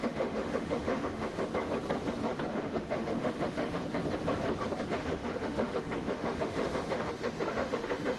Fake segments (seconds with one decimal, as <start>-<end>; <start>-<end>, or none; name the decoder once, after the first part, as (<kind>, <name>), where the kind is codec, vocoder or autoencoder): 0.0-1.4 (autoencoder, DAC-VAE); 2.5-3.8; 4.9-8.2